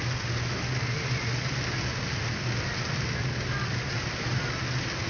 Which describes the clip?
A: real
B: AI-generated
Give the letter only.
A